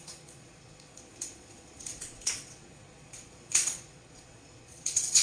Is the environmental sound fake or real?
fake